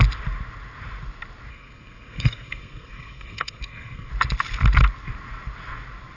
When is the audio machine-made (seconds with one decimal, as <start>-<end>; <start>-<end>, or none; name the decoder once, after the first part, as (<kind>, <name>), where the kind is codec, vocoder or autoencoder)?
1.5-4.1 (codec, SNAC)